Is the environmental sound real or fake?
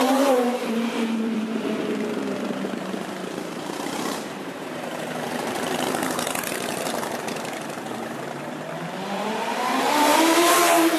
fake